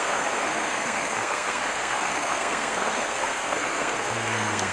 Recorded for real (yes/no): no